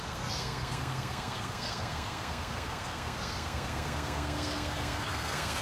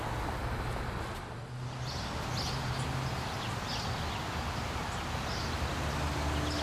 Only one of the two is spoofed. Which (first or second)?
first